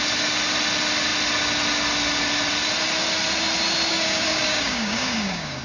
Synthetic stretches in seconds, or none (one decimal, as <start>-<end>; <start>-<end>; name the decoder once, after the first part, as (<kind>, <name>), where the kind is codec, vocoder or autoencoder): 3.9-5.6 (codec, DAC)